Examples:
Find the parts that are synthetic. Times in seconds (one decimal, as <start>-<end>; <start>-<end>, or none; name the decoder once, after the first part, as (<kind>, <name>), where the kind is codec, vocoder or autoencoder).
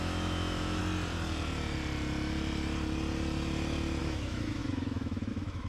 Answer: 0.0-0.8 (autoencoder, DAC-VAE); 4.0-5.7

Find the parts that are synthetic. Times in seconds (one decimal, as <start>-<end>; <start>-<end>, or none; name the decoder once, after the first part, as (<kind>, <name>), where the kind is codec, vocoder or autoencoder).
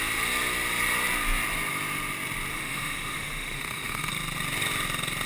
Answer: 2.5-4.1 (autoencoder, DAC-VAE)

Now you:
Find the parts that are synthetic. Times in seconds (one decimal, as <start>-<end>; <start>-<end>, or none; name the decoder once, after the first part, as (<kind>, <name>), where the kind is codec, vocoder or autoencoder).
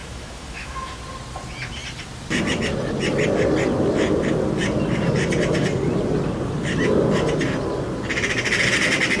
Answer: 0.0-1.0 (autoencoder, DAC-VAE)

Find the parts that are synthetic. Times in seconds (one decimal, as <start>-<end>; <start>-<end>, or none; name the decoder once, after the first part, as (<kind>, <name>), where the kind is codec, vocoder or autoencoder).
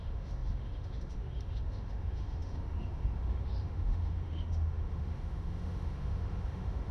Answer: 0.0-6.9 (autoencoder, DAC-VAE)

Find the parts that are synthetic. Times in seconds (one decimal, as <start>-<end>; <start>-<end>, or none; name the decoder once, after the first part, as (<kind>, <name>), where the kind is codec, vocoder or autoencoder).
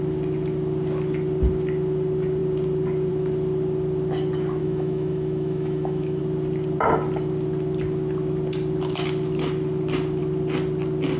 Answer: 4.6-6.2 (autoencoder, DAC-VAE)